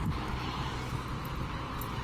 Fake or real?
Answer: real